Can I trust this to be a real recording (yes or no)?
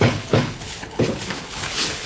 no